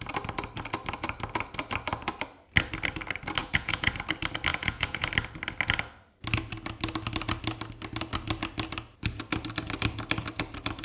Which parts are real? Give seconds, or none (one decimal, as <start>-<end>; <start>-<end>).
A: 0.0-3.4; 3.9-4.5; 5.1-10.8